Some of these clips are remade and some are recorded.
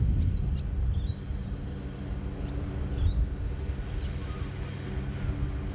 recorded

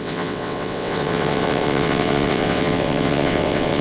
remade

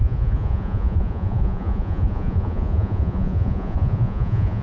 remade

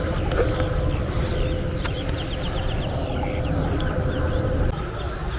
recorded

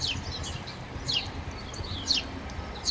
recorded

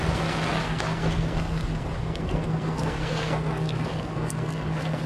remade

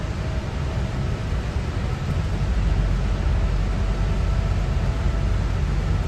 recorded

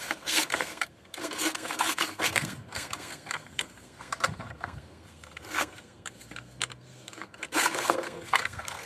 remade